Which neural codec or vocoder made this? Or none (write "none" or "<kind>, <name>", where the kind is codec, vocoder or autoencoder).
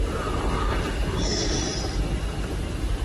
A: vocoder, BigVGAN v2